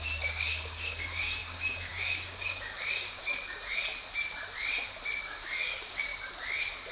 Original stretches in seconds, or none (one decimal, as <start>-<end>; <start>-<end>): 3.3-5.2; 6.1-6.9

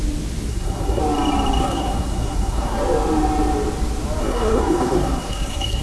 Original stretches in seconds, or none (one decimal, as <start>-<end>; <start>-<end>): 0.0-0.5; 1.0-1.6; 2.8-4.2

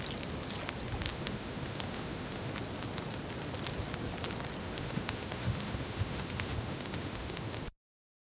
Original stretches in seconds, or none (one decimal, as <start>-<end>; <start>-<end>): 0.0-1.1; 2.5-4.6; 7.6-8.2

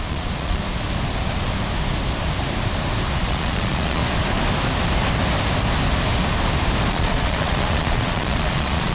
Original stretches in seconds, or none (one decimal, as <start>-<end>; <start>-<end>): 0.6-3.2; 4.0-6.9

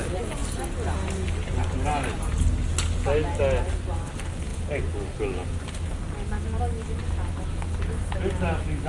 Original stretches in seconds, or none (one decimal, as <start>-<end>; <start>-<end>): 0.0-8.9

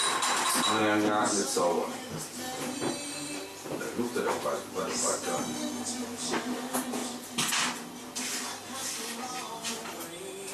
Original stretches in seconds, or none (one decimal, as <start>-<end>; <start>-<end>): 0.0-10.5

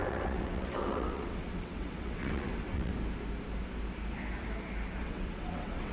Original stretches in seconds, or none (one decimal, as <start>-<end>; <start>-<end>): 2.9-5.0